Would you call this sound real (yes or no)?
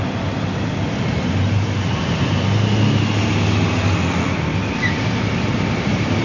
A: yes